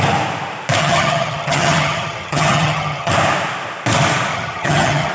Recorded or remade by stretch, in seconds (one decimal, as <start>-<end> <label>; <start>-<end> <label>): 0.0-0.8 recorded; 0.8-3.1 remade; 3.1-4.3 recorded; 4.3-5.1 remade